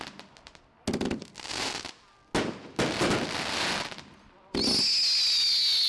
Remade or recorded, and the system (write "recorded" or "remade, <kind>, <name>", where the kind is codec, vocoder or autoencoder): recorded